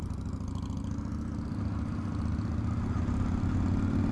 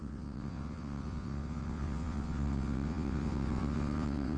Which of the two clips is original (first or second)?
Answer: first